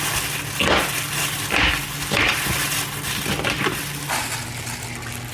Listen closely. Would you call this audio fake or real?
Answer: real